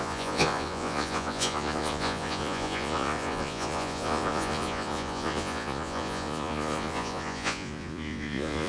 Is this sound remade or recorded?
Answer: remade